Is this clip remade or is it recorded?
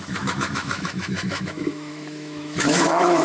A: remade